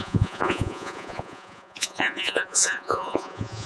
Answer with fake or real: fake